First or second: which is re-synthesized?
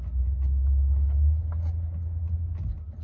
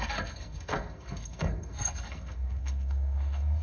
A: second